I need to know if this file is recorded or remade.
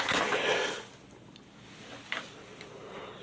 recorded